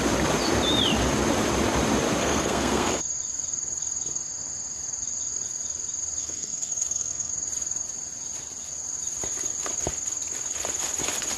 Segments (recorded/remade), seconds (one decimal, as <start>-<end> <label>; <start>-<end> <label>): 0.0-2.2 recorded; 2.2-3.0 remade; 3.0-6.2 recorded; 6.2-7.3 remade; 7.3-11.4 recorded